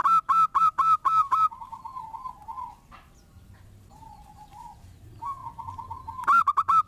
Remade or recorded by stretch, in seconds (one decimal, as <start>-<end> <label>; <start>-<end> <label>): 0.0-0.6 recorded; 0.6-2.4 remade; 2.4-3.2 recorded; 3.2-5.4 remade; 5.4-6.4 recorded; 6.4-6.9 remade